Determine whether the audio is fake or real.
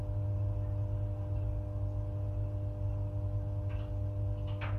real